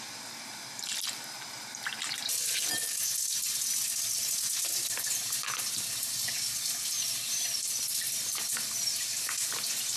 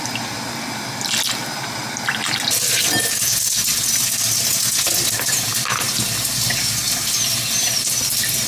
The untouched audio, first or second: second